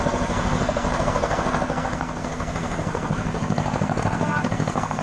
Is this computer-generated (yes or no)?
yes